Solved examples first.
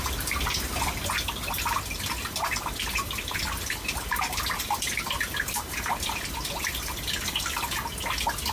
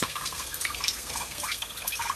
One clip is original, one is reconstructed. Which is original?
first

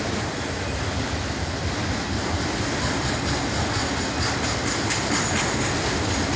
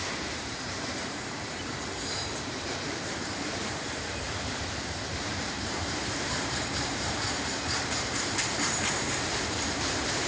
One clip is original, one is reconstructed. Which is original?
first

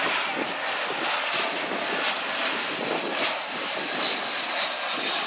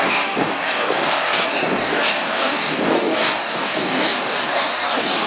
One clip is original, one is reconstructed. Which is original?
first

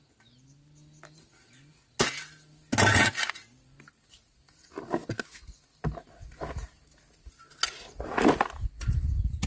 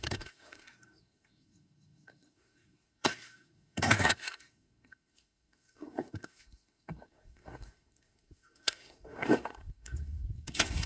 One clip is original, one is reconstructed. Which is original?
first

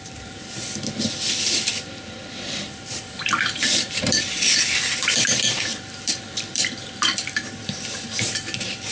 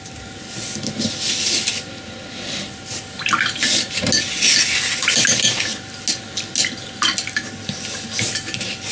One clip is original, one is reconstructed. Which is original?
second